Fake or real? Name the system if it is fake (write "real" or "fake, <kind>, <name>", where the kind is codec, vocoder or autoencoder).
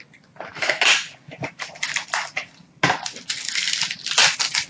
real